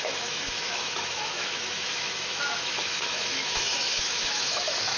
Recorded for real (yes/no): no